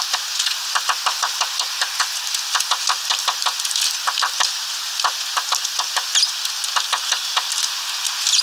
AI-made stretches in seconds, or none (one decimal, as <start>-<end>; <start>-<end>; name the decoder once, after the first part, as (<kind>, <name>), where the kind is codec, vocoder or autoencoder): none